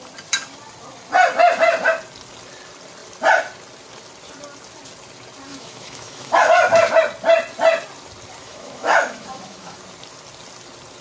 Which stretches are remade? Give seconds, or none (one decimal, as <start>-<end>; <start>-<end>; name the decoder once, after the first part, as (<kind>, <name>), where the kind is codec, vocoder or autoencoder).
5.5-6.4 (autoencoder, DAC-VAE); 8.4-9.8